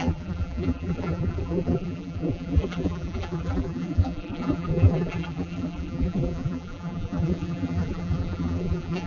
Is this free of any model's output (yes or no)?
no